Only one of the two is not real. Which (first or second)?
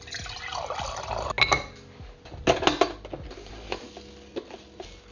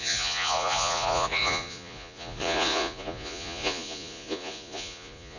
second